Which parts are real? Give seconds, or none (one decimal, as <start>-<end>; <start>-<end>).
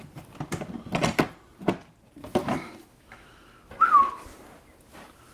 0.0-2.4; 3.6-5.3